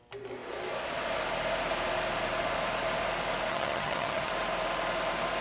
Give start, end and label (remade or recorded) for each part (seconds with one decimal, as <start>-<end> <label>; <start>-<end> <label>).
0.0-3.5 recorded; 3.5-4.3 remade; 4.3-5.4 recorded